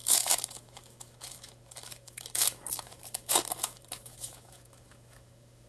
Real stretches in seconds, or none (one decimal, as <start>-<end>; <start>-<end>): none